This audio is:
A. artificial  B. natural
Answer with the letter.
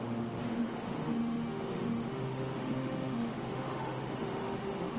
A